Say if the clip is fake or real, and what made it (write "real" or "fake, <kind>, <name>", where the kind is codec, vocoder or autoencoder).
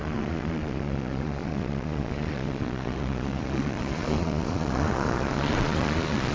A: fake, vocoder, Vocos